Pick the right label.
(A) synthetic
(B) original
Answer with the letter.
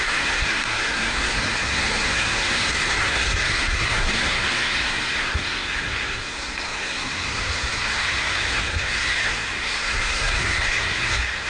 A